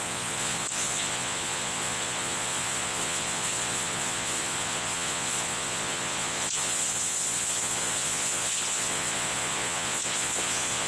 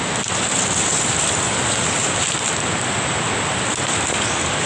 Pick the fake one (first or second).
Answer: first